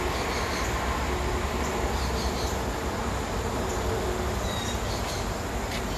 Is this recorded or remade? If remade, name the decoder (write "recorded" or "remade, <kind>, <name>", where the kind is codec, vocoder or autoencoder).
recorded